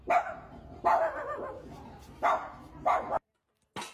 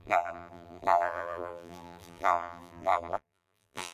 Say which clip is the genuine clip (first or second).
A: first